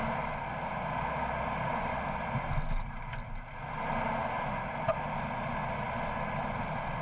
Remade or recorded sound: recorded